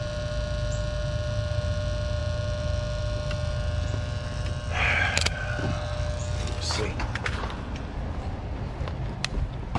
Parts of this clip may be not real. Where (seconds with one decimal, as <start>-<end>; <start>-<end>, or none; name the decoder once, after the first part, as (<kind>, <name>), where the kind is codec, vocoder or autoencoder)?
none